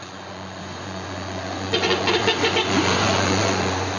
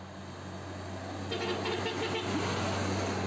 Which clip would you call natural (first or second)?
second